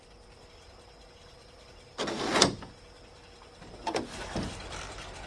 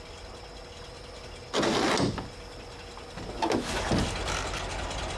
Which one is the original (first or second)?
second